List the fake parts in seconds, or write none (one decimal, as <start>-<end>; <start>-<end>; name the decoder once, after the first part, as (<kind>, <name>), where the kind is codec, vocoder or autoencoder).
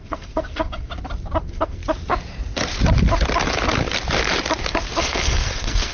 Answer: 0.0-0.9 (codec, SNAC); 1.4-1.8; 5.0-5.9